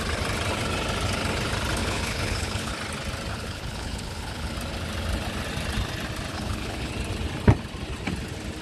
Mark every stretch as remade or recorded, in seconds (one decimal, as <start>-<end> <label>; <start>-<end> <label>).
0.0-1.8 recorded; 1.8-2.7 remade; 2.7-3.3 recorded; 3.3-4.5 remade; 4.5-6.3 recorded; 6.3-6.9 remade; 6.9-8.6 recorded

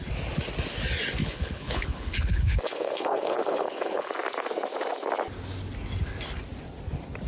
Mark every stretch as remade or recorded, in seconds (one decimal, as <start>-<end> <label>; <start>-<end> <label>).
0.0-1.2 recorded; 1.2-4.1 remade; 4.1-7.3 recorded

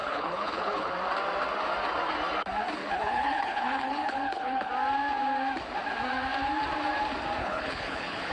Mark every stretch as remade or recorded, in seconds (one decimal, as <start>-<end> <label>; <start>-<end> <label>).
0.0-0.9 remade; 0.9-2.8 recorded; 2.8-4.7 remade; 4.7-7.4 recorded; 7.4-8.3 remade

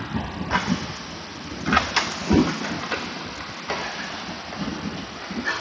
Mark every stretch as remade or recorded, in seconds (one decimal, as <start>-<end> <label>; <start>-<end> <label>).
0.0-5.6 recorded

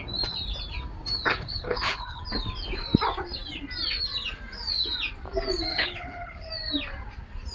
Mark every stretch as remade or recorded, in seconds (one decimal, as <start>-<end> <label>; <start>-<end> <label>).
0.0-1.3 recorded; 1.3-2.2 remade; 2.2-5.7 recorded; 5.7-6.5 remade; 6.5-7.5 recorded